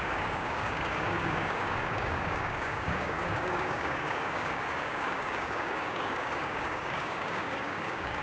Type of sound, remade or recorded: remade